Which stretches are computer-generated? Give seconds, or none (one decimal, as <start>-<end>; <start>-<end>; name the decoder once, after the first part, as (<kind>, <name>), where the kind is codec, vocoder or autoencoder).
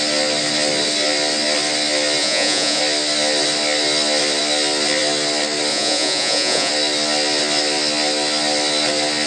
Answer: 2.2-2.8 (vocoder, Vocos); 5.7-6.7